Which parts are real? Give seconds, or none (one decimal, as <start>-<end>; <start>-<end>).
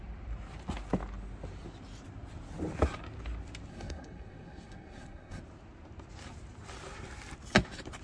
0.0-3.7; 5.4-8.0